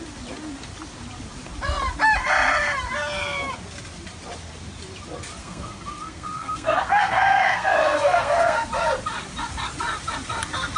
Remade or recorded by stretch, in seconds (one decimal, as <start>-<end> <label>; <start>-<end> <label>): 0.0-5.4 recorded; 5.4-8.7 remade; 8.7-10.8 recorded